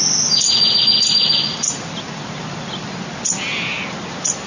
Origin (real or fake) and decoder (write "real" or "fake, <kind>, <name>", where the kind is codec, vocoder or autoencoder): real